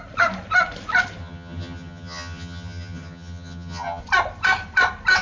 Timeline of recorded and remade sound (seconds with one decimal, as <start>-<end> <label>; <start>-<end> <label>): 0.0-1.2 recorded; 1.2-4.0 remade; 4.0-5.2 recorded